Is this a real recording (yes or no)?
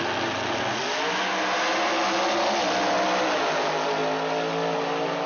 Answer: yes